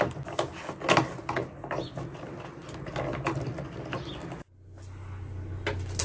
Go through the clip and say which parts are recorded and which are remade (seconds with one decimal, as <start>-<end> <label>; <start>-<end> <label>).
0.0-6.0 recorded